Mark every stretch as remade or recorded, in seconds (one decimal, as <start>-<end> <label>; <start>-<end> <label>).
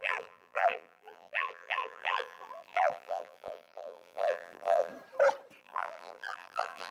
0.0-4.9 remade; 4.9-5.6 recorded; 5.6-6.9 remade